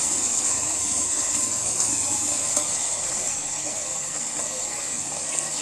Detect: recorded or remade remade